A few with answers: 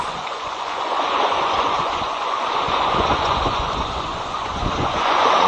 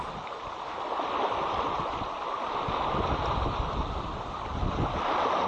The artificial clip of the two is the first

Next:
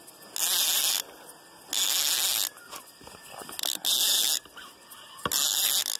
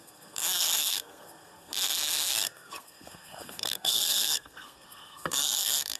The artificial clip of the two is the second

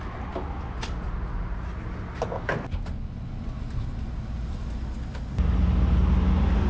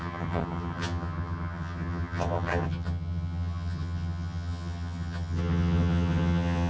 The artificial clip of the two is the second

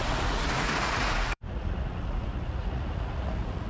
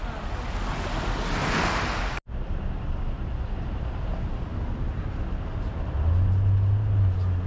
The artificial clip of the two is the first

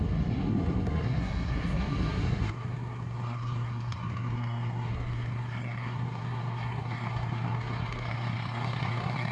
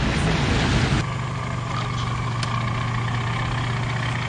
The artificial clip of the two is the first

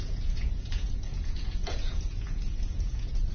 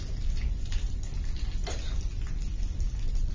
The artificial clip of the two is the first